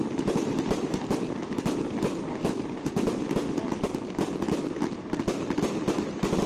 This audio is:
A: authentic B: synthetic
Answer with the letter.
A